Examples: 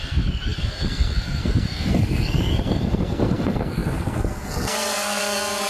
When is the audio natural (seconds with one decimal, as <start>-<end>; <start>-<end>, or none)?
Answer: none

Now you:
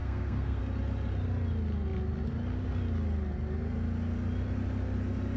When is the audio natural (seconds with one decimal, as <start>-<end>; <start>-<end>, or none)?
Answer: 0.6-5.4

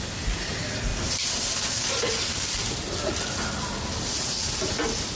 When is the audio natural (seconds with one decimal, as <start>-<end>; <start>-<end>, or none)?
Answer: 0.0-0.9; 3.1-5.2

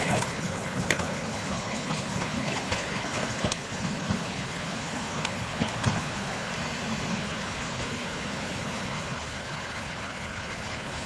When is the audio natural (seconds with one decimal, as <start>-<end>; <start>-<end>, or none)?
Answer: 6.5-7.1

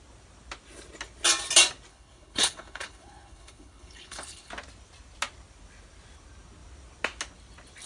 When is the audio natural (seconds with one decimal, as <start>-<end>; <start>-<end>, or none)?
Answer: 0.0-1.9; 4.5-7.9